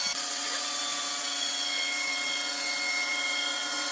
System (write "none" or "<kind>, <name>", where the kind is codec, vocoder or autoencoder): vocoder, WaveNeXt